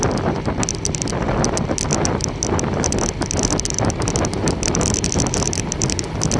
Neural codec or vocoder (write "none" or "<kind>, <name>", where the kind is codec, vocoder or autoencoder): none